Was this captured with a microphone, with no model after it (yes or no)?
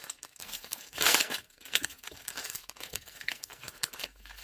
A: no